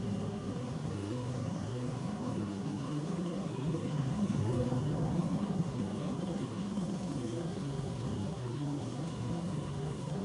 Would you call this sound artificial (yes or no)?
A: yes